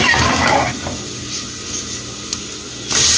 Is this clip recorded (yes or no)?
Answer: yes